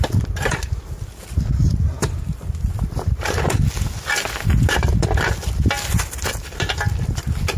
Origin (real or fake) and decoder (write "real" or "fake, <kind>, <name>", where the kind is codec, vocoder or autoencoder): real